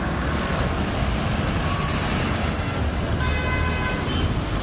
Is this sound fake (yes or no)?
no